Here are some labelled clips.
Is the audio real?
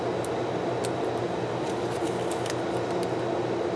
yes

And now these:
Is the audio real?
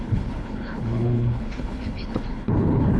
no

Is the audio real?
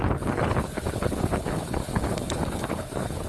no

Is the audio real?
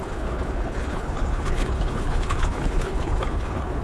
no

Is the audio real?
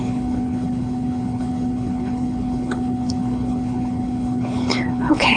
no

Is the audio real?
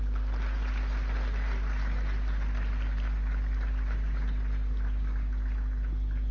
yes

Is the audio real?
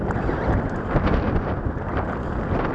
yes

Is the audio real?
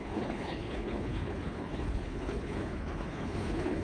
no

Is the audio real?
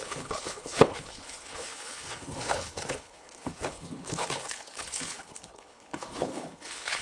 no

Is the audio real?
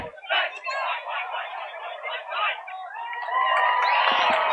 yes